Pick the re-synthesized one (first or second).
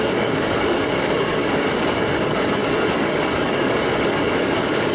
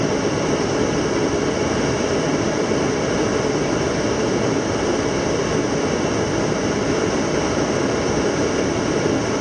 first